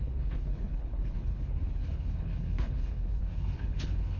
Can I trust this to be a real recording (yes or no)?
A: no